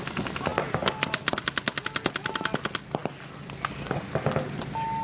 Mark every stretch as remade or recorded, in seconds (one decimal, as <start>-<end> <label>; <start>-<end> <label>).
0.0-5.0 recorded